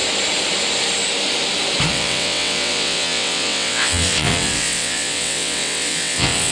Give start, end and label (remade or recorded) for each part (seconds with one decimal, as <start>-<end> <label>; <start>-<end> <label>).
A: 0.0-1.9 recorded; 1.9-6.5 remade